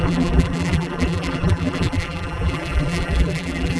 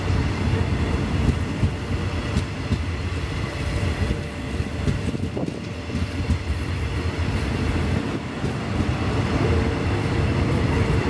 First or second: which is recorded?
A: second